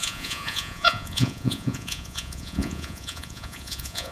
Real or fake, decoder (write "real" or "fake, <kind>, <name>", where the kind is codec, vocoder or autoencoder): fake, vocoder, Vocos